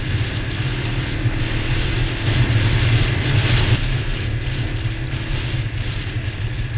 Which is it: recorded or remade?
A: recorded